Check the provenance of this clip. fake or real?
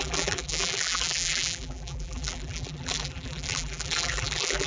fake